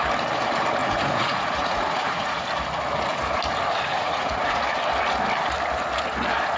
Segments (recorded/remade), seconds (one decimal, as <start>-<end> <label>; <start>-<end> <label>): 0.0-0.8 recorded; 0.8-2.4 remade; 2.4-3.9 recorded; 3.9-4.6 remade; 4.6-6.6 recorded